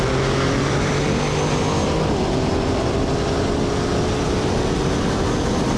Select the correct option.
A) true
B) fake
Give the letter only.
A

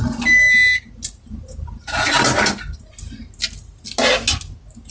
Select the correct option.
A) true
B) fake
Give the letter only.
A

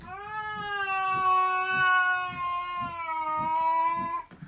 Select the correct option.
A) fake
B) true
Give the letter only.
B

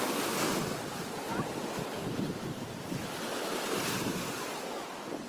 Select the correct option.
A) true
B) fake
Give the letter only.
A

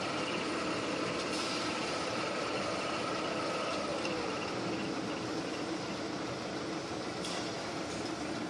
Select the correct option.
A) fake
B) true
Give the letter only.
B